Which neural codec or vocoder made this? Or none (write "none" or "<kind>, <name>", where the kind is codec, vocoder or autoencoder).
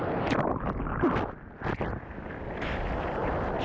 none